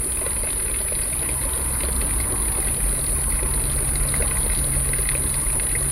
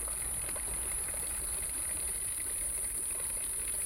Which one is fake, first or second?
second